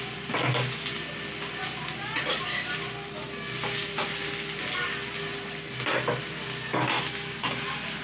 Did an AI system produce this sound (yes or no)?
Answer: no